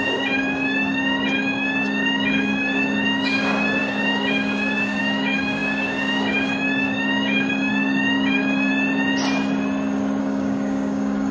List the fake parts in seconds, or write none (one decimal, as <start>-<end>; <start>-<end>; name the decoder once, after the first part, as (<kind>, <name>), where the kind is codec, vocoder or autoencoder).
0.0-8.7 (codec, DAC); 10.2-11.3